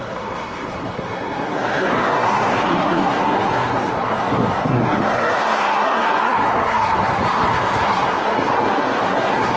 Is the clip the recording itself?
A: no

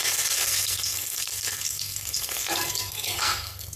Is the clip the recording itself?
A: no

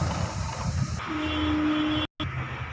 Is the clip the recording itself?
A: yes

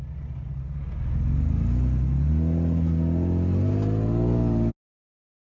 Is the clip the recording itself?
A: yes